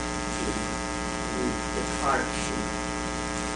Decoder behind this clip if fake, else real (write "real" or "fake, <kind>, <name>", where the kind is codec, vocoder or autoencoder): real